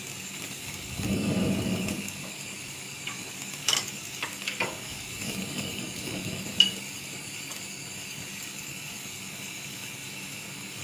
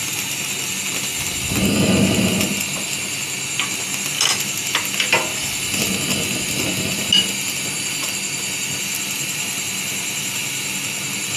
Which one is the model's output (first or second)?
first